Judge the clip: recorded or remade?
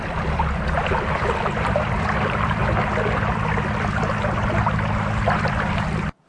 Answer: remade